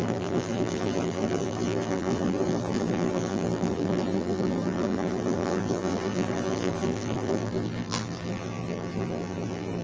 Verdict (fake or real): fake